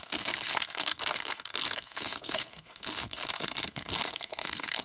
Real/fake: fake